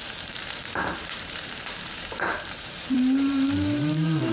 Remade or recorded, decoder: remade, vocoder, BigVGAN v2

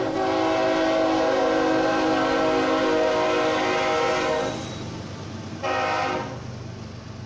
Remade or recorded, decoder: recorded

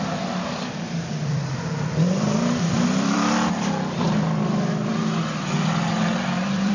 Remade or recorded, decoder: remade, vocoder, BigVGAN v2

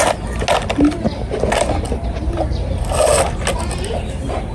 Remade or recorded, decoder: recorded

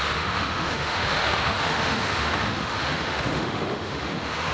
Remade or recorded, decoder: remade, autoencoder, DAC-VAE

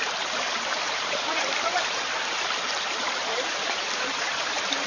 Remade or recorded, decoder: remade, vocoder, BigVGAN v2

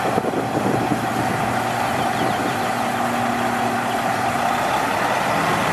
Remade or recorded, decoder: recorded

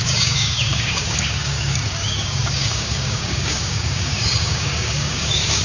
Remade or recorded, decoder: remade, codec, DAC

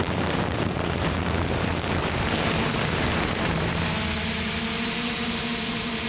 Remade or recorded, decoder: remade, vocoder, BigVGAN v2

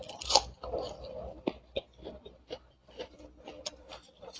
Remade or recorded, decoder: recorded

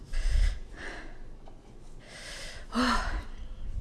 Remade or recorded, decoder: recorded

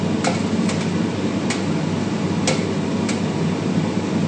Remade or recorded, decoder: recorded